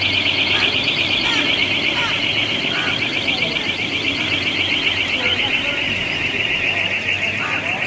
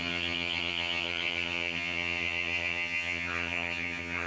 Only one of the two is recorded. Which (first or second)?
first